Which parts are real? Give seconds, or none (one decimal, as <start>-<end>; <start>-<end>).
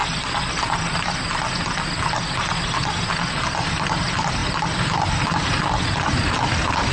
0.0-6.9